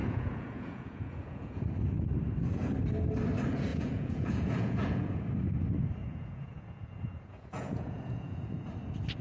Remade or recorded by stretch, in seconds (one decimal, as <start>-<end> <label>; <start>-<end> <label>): 0.0-1.6 remade; 1.6-3.7 recorded; 3.7-5.2 remade; 5.2-6.0 recorded; 6.0-8.7 remade; 8.7-9.2 recorded